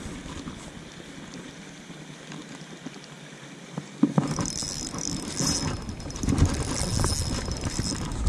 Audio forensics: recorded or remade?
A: recorded